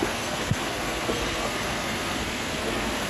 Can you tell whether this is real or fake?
fake